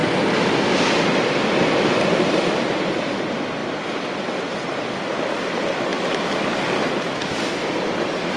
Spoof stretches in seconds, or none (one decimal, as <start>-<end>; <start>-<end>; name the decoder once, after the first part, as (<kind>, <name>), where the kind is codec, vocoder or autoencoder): none